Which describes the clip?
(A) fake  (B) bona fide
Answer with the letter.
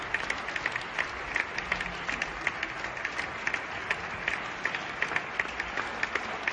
B